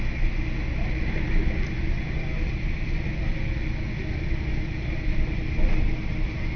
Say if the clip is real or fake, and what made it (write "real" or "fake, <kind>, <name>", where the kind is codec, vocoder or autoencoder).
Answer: real